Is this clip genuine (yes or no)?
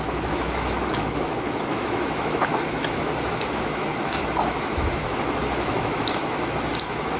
no